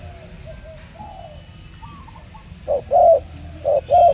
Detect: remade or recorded recorded